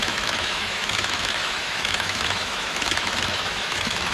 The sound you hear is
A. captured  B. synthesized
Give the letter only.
B